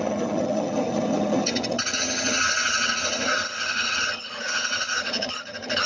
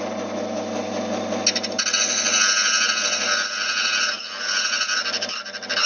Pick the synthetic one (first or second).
first